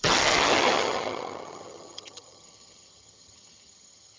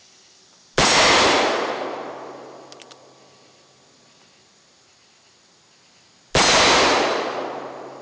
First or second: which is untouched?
second